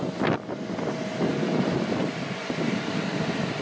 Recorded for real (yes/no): no